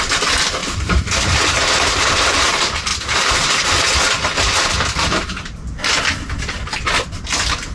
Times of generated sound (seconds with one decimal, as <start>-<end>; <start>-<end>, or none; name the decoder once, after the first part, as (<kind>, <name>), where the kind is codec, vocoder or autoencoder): 0.6-2.5 (vocoder, BigVGAN v2); 2.9-3.8